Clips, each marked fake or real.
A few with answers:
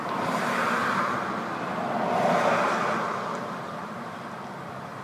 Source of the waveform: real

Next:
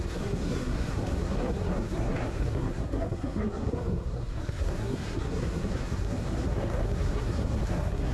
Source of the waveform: fake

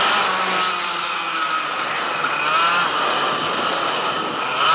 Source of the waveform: real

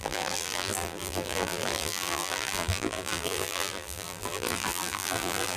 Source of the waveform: fake